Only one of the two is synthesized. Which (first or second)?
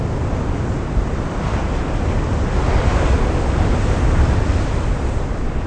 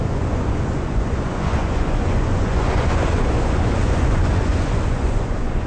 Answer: second